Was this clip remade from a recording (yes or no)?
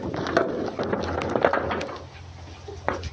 no